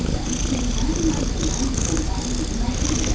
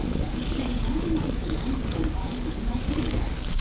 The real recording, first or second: first